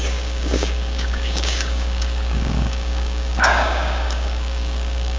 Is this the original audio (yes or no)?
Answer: no